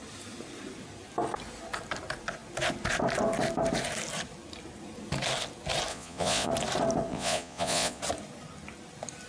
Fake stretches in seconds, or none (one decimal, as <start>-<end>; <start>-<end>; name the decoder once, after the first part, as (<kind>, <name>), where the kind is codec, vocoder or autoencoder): 5.9-6.5 (vocoder, Vocos); 7.1-8.0